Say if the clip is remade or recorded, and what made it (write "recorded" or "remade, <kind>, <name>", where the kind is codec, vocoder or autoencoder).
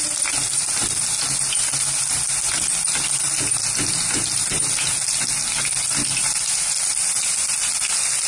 recorded